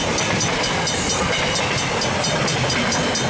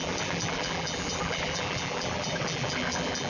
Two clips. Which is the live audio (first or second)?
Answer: first